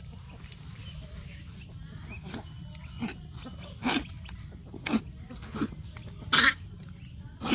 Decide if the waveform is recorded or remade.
recorded